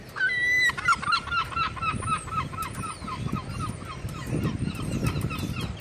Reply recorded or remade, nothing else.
recorded